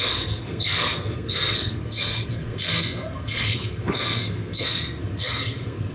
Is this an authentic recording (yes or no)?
no